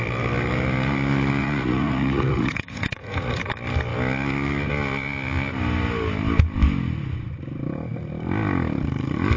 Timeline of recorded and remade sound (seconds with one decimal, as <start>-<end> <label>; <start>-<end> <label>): 0.0-1.4 recorded; 1.4-3.5 remade; 3.5-9.4 recorded